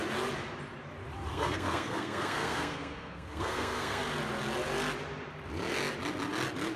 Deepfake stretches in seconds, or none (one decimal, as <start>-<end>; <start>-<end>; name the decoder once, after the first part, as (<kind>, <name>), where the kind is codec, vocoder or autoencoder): 1.3-4.0 (codec, SNAC)